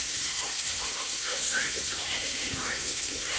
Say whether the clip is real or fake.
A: fake